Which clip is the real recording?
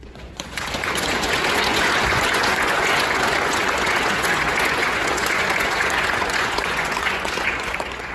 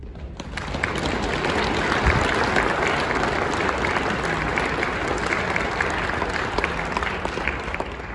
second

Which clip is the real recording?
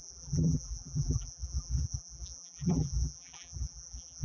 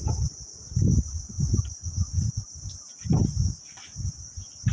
second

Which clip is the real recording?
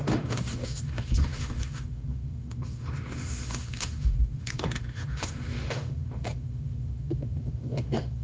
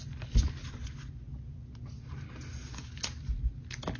second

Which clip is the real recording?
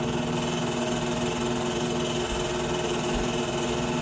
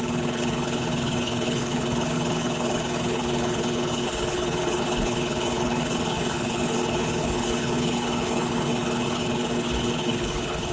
first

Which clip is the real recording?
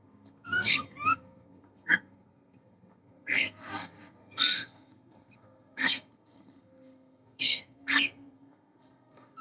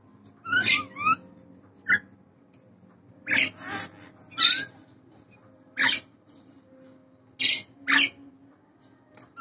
second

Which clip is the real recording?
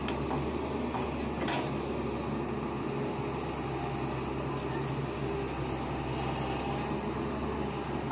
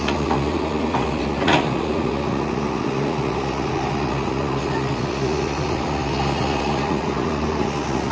first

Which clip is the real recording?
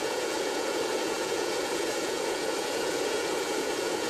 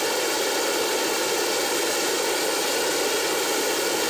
second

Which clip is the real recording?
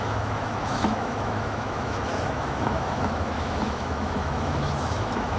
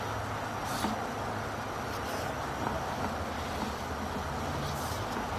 second